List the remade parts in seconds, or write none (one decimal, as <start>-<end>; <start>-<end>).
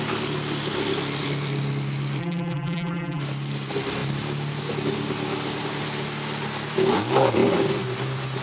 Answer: 2.2-3.2